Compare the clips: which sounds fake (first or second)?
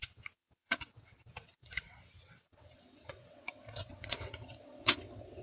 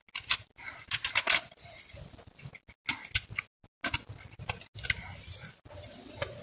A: first